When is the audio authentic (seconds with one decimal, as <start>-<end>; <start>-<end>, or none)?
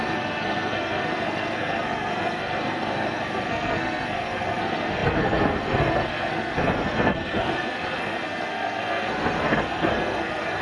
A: none